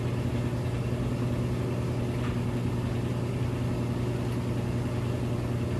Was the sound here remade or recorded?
recorded